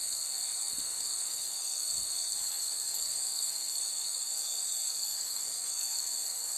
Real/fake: fake